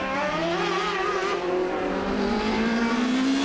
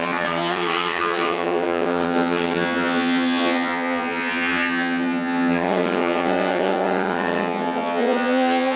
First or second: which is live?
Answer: first